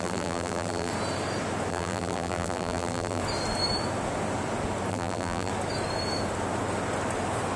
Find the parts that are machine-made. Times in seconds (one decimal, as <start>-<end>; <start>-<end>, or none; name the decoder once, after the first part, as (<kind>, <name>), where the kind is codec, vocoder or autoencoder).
0.0-0.9 (vocoder, BigVGAN v2); 1.7-3.2; 4.9-5.5